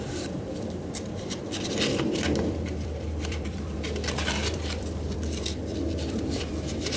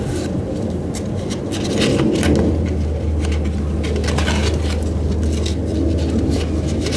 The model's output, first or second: first